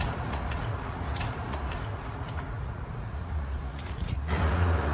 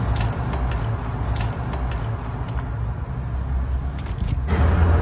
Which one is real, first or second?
second